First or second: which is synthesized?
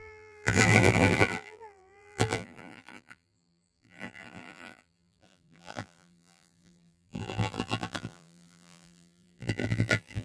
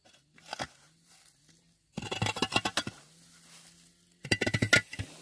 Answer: first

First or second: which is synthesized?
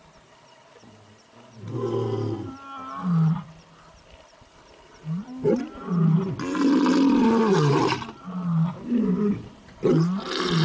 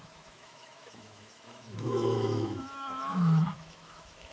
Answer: second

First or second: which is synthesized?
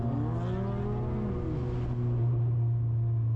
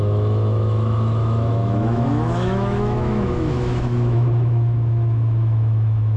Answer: second